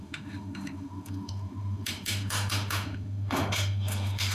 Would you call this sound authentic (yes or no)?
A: no